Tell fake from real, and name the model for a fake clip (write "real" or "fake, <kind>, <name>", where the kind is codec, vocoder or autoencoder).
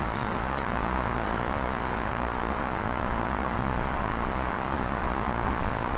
fake, vocoder, Vocos